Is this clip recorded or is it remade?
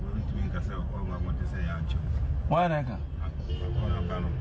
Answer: recorded